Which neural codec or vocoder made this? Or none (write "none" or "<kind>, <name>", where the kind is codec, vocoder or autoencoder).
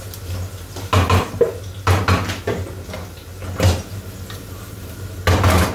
none